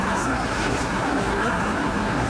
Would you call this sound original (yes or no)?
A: no